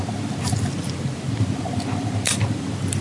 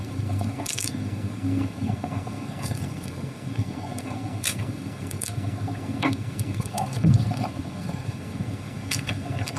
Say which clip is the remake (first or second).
second